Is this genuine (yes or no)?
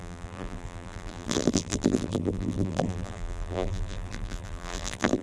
no